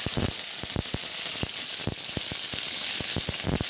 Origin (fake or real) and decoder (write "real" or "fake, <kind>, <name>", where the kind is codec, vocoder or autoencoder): real